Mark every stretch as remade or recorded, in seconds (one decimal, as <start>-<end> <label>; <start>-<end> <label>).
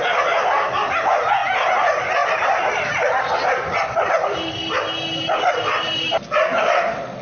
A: 0.0-7.2 recorded